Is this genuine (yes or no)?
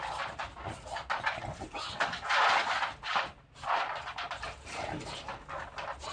yes